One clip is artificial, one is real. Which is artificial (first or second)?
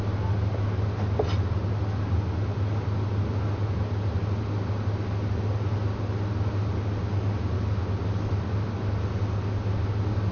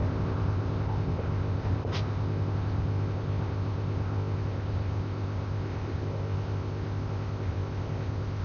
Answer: second